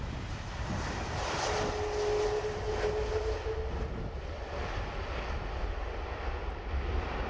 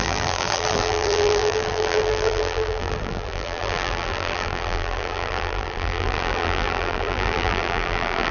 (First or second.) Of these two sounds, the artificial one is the second